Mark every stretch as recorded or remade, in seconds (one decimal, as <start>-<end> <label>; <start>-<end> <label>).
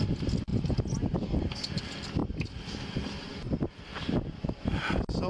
0.0-5.3 recorded